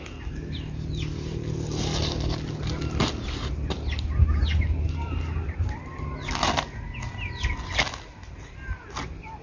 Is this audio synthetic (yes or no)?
no